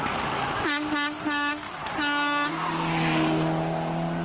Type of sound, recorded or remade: recorded